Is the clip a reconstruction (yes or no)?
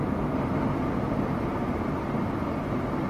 no